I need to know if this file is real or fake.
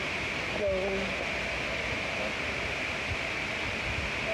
real